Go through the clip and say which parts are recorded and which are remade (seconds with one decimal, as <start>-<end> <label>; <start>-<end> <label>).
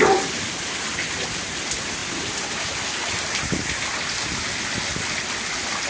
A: 0.0-5.9 recorded